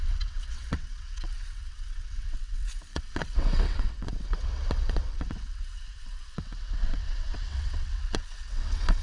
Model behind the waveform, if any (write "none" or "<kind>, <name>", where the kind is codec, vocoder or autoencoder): vocoder, WaveNeXt